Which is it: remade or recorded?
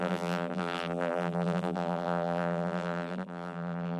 remade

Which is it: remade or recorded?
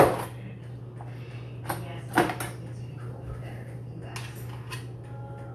recorded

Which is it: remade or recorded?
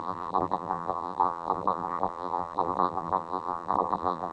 remade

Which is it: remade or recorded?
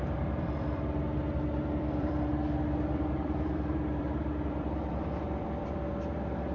remade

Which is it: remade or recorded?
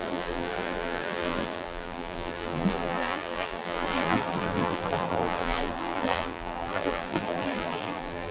remade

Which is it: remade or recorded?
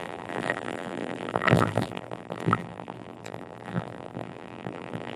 remade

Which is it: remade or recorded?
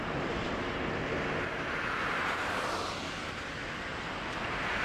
recorded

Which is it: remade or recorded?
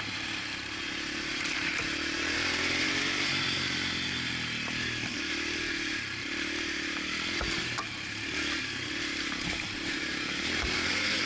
remade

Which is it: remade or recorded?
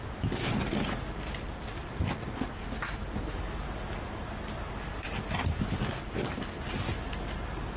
recorded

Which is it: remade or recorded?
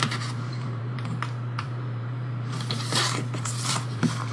remade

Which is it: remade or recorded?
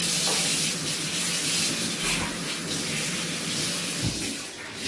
recorded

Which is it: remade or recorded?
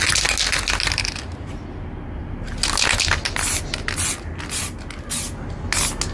recorded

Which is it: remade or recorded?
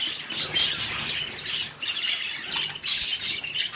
recorded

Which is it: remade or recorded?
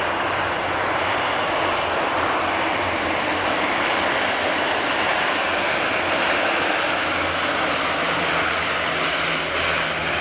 recorded